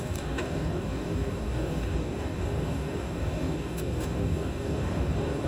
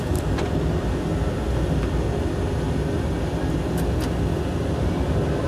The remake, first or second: first